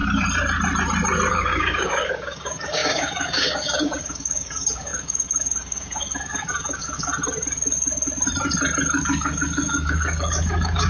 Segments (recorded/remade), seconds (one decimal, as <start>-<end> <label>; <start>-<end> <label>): 0.0-1.3 recorded; 1.3-7.1 remade; 7.1-9.0 recorded; 9.0-10.9 remade